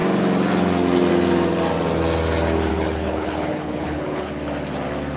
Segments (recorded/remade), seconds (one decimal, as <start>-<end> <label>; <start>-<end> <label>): 0.0-2.7 recorded; 2.7-4.3 remade; 4.3-5.2 recorded